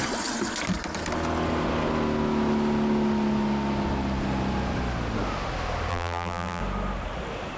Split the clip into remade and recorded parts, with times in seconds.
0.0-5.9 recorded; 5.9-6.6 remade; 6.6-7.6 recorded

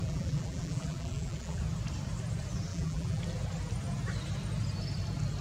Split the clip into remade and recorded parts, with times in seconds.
0.0-1.6 remade; 1.6-2.7 recorded; 2.7-3.2 remade; 3.2-5.4 recorded